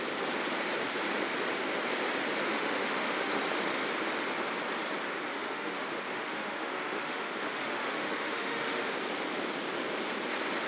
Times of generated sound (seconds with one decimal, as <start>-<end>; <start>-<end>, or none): 2.5-3.3; 5.3-8.9